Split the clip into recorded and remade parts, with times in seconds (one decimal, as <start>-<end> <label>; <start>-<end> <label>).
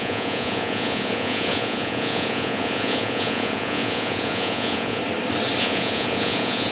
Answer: 0.0-5.0 remade; 5.0-5.6 recorded; 5.6-6.7 remade